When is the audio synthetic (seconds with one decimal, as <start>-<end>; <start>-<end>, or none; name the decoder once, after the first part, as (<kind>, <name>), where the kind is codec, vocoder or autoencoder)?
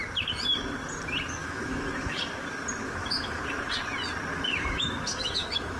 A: 1.4-2.2 (autoencoder, DAC-VAE); 2.8-3.4; 4.3-5.8